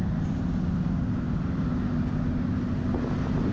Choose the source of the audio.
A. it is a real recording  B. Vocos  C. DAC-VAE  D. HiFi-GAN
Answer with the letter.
A